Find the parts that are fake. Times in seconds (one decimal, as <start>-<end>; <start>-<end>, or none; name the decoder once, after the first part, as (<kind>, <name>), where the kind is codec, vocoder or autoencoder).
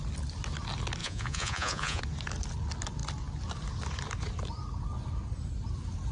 1.0-2.0 (vocoder, Vocos)